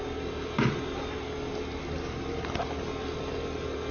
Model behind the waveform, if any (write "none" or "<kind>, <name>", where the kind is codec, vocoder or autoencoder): none